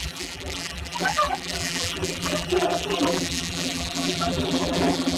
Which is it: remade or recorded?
remade